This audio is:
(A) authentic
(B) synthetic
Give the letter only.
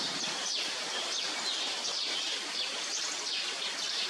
B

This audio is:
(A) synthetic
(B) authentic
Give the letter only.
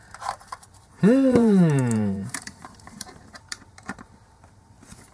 A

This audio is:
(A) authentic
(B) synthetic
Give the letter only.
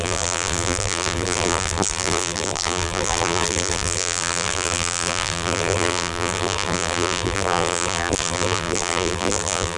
B